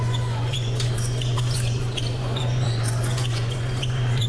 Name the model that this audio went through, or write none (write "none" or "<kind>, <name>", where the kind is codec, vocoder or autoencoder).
vocoder, Vocos